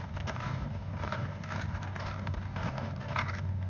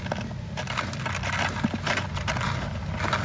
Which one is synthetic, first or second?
first